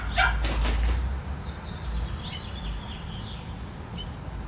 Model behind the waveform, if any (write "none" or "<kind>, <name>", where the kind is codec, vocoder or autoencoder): none